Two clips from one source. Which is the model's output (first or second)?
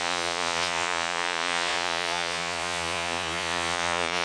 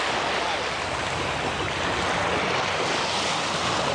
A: first